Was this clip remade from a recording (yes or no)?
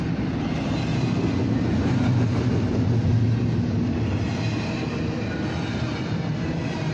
no